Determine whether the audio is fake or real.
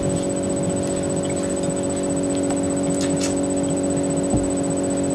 real